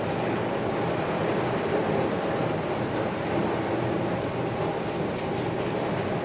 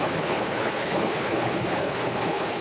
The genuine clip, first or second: first